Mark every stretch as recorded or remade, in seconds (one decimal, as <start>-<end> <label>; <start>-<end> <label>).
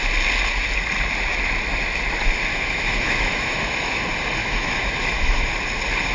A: 0.0-2.5 recorded; 2.5-4.0 remade; 4.0-4.4 recorded; 4.4-5.5 remade; 5.5-6.1 recorded